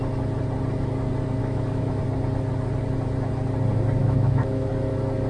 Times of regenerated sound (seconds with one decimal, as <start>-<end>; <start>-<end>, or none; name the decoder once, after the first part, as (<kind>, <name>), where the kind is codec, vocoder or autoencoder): 1.4-2.0 (autoencoder, DAC-VAE); 4.0-4.7

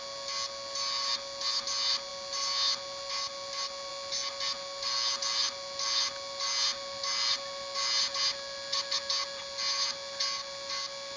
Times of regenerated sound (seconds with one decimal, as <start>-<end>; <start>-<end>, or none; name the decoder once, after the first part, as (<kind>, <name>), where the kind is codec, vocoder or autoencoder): none

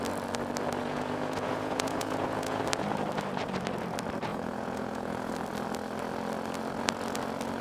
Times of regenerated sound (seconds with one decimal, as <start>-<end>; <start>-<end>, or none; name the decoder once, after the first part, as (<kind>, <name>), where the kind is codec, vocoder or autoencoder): 0.8-2.6 (vocoder, Vocos); 4.3-5.3